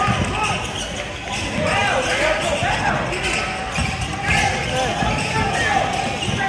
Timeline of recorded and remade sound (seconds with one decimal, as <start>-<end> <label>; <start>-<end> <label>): 0.0-6.5 recorded